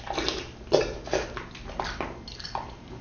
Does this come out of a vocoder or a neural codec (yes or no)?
no